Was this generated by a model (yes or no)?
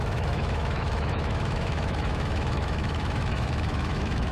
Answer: yes